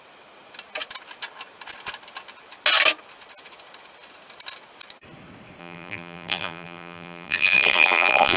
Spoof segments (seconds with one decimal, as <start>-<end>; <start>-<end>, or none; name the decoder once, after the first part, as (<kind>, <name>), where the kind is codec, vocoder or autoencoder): 5.6-8.4 (vocoder, BigVGAN v2)